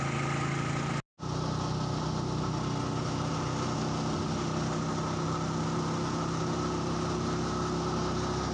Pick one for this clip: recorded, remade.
recorded